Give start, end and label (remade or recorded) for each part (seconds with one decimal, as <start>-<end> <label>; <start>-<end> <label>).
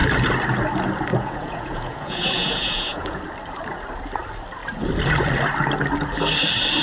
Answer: 0.0-1.1 recorded; 1.1-3.2 remade; 3.2-6.8 recorded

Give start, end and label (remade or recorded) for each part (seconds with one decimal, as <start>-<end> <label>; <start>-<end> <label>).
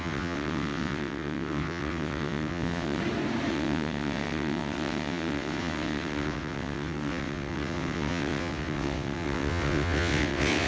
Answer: 0.0-3.0 remade; 3.0-3.5 recorded; 3.5-10.7 remade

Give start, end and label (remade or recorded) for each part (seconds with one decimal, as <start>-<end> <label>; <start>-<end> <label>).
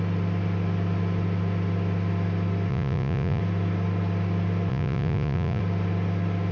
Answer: 0.0-2.7 recorded; 2.7-3.4 remade; 3.4-4.7 recorded; 4.7-5.6 remade; 5.6-6.5 recorded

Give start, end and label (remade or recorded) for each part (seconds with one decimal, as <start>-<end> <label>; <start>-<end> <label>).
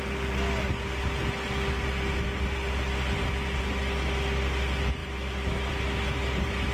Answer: 0.0-6.7 recorded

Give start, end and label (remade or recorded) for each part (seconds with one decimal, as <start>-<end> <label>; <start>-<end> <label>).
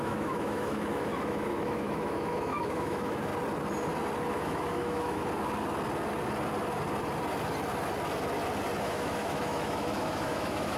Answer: 0.0-3.3 remade; 3.3-4.3 recorded; 4.3-5.2 remade; 5.2-8.8 recorded; 8.8-10.8 remade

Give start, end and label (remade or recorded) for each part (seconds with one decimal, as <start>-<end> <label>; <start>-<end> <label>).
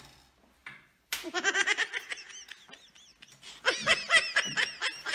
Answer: 0.0-0.6 recorded; 0.6-1.9 remade; 1.9-5.1 recorded